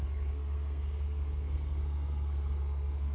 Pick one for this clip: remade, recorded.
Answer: remade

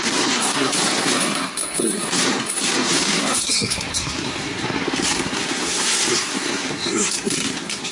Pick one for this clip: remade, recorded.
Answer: remade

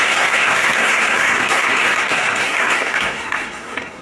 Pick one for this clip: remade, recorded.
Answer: remade